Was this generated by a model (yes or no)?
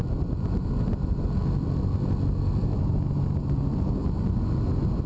no